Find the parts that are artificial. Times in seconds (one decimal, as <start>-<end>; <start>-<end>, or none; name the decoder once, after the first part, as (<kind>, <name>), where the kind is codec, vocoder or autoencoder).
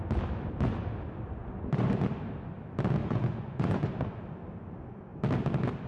1.4-2.1 (vocoder, Vocos); 3.0-3.9